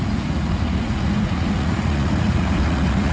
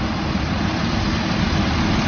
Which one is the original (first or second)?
second